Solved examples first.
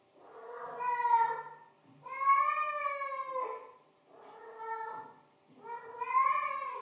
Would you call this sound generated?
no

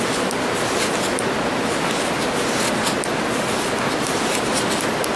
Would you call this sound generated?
no